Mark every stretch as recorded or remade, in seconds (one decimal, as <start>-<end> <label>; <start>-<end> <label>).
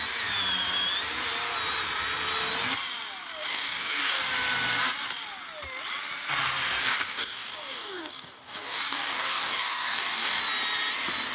0.0-3.5 recorded; 3.5-4.2 remade; 4.2-6.8 recorded; 6.8-10.4 remade; 10.4-11.3 recorded